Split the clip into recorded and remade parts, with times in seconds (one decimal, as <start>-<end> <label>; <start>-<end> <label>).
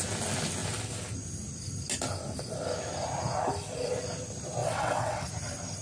0.0-4.6 recorded; 4.6-5.3 remade; 5.3-5.8 recorded